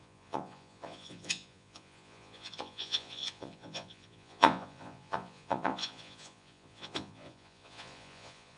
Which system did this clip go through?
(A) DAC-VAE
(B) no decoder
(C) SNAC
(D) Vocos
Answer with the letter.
D